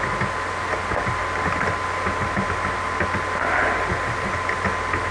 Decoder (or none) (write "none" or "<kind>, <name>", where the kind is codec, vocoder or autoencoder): none